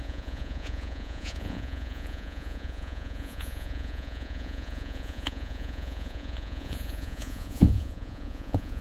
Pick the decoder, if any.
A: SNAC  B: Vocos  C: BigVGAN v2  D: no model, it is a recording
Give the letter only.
B